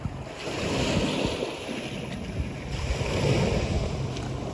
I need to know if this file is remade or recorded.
recorded